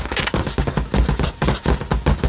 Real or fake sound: real